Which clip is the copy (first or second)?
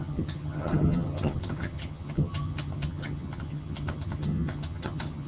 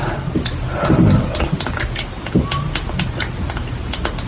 first